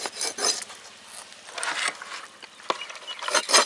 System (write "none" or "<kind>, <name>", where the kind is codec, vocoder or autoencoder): none